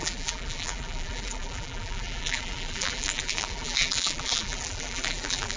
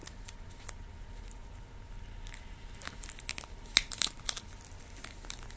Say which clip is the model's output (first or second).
first